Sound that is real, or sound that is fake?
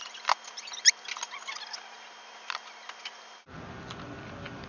real